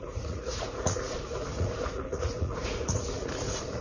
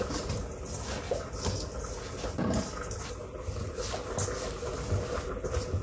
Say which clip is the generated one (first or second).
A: first